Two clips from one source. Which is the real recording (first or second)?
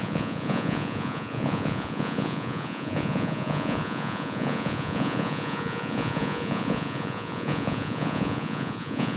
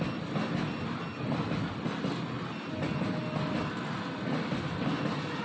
second